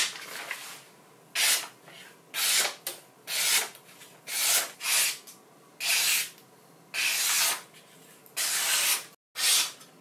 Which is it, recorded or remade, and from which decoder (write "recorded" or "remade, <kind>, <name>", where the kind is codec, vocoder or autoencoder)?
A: recorded